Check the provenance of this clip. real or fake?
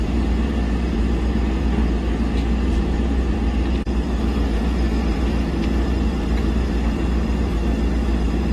fake